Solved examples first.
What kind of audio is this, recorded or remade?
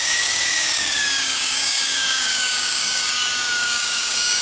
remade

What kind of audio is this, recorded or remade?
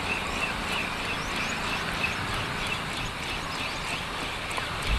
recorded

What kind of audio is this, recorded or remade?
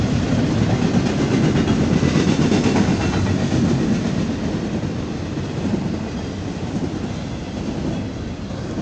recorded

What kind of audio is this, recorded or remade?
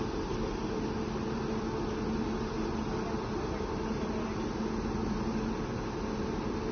recorded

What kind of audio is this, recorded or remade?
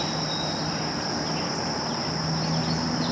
recorded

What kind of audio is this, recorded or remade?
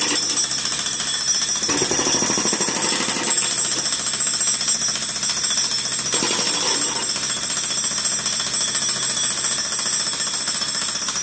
recorded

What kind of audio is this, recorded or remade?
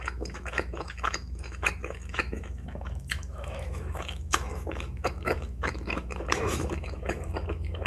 remade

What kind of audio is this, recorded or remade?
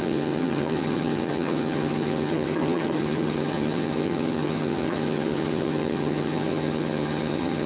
remade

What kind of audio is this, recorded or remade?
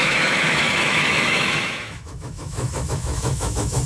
remade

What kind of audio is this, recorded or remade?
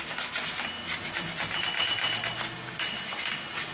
recorded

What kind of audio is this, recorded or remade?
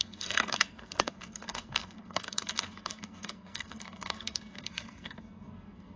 remade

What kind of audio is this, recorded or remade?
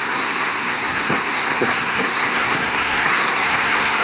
remade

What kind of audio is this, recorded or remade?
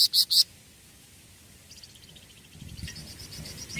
recorded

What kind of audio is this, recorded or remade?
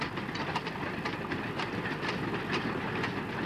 recorded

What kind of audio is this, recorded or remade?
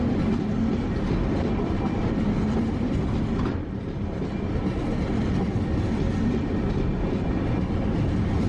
recorded